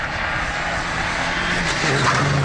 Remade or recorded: recorded